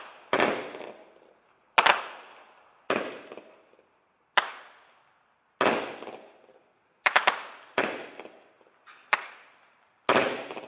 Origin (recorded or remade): recorded